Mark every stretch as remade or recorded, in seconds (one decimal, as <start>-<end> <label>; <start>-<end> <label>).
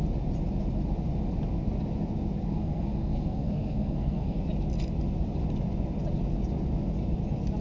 0.0-2.5 recorded; 2.5-4.4 remade; 4.4-7.6 recorded